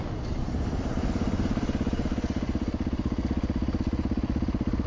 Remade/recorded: recorded